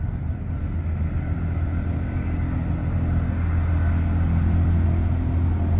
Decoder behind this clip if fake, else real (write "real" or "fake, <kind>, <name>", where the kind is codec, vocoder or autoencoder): real